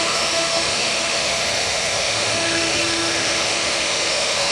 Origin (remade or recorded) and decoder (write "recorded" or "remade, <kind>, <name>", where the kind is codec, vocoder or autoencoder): remade, autoencoder, DAC-VAE